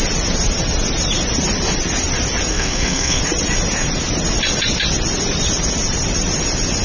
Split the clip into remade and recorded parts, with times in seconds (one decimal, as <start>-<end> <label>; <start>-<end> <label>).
0.0-2.5 recorded; 2.5-3.2 remade; 3.2-6.8 recorded